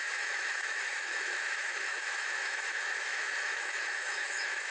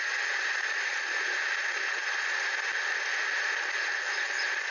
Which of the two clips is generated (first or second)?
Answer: first